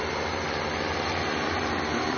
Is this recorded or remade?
recorded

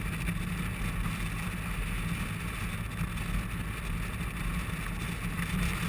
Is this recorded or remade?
recorded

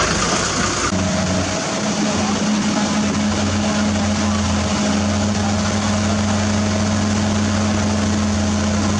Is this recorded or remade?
recorded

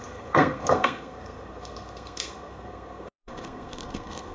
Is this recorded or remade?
remade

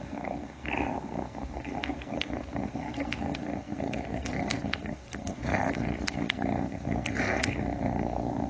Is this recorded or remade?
remade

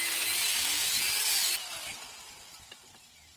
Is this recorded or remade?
recorded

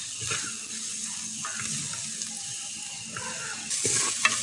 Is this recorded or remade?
recorded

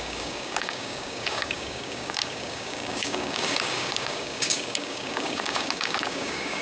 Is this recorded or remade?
remade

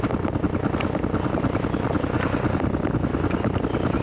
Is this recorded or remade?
recorded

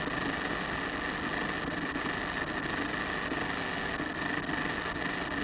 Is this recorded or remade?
recorded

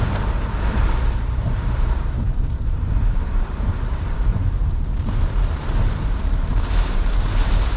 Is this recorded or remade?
remade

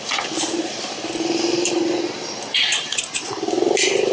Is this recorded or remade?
recorded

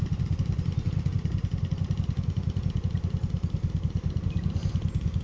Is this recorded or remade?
recorded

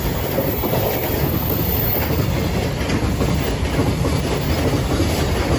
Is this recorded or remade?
recorded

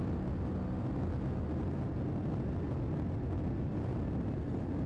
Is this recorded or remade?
recorded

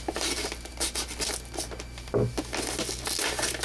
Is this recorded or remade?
recorded